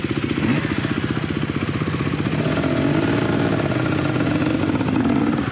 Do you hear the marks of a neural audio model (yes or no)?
no